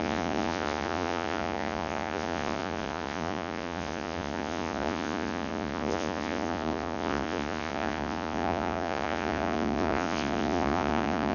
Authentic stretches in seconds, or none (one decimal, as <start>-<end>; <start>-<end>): none